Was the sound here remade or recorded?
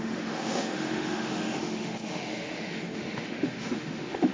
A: remade